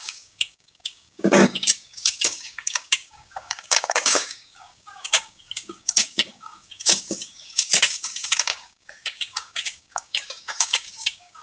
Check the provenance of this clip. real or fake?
fake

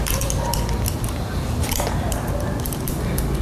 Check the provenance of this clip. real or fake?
real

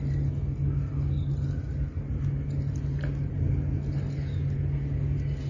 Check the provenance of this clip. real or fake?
real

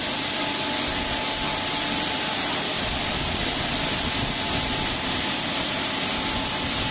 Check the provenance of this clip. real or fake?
real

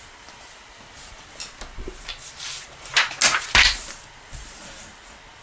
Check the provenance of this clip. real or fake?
real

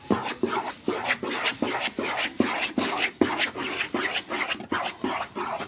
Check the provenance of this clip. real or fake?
real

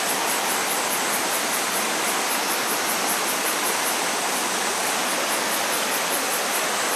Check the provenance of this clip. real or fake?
real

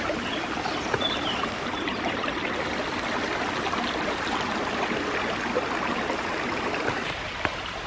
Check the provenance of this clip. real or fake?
real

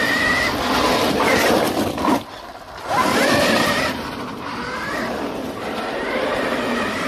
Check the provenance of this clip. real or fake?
real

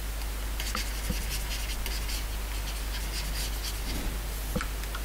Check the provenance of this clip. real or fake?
real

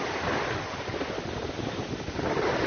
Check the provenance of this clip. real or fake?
real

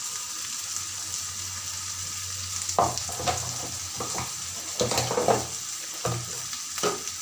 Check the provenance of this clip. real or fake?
real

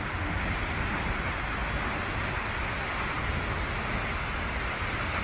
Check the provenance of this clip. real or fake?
real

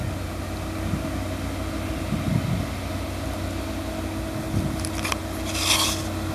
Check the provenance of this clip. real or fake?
real